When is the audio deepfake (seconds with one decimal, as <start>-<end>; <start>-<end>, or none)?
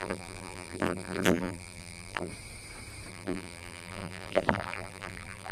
0.0-2.3; 3.1-5.5